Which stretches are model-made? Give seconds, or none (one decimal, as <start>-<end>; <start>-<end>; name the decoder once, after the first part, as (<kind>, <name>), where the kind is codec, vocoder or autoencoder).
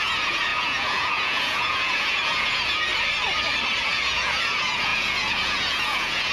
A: 0.0-2.9 (vocoder, Vocos); 3.8-6.3